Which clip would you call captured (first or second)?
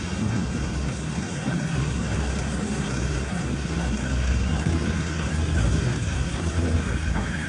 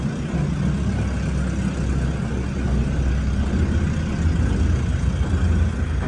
second